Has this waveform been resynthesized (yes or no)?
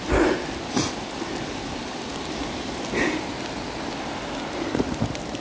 no